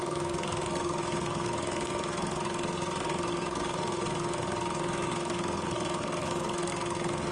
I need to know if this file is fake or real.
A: fake